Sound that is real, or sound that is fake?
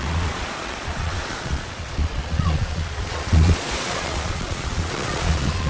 fake